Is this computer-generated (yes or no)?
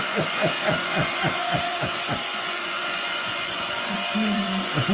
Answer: yes